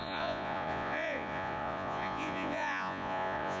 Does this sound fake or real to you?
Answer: fake